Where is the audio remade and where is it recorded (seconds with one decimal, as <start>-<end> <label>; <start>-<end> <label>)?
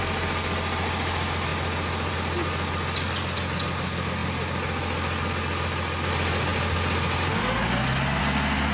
0.0-8.7 recorded